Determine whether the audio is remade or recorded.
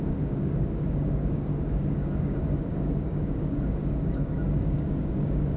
remade